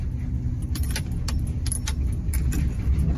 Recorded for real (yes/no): yes